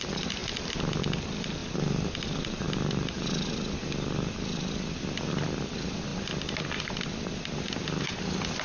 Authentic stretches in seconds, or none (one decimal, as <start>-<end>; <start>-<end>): 0.0-8.6